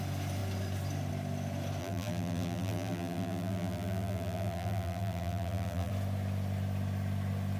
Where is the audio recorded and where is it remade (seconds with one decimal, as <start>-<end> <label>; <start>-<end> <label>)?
0.0-1.8 recorded; 1.8-5.9 remade; 5.9-7.6 recorded

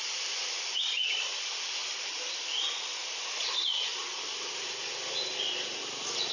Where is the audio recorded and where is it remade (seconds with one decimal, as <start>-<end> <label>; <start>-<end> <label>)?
0.0-1.0 recorded; 1.0-2.2 remade; 2.2-3.9 recorded; 3.9-4.5 remade; 4.5-6.3 recorded